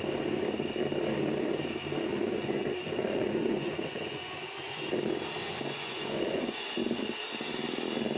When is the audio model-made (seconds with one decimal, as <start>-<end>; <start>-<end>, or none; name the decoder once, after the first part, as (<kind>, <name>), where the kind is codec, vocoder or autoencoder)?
2.1-4.8 (vocoder, Vocos); 5.4-6.9